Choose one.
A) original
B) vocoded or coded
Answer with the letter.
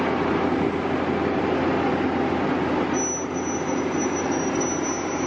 A